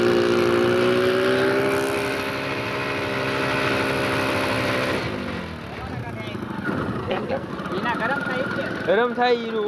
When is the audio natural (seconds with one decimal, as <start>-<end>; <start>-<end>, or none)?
0.0-7.0; 7.5-9.7